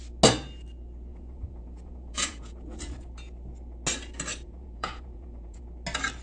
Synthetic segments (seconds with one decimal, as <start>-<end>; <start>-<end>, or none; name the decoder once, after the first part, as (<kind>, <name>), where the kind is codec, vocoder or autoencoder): 1.1-3.1 (vocoder, Vocos); 4.3-5.6